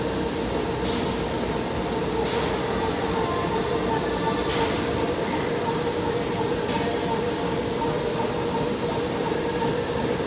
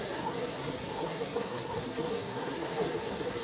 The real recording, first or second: first